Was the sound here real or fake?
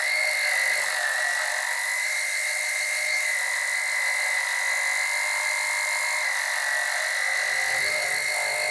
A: real